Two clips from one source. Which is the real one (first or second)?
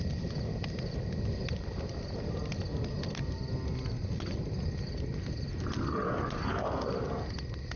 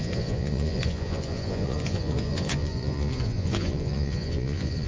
first